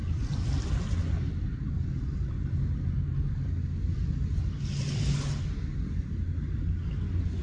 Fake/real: real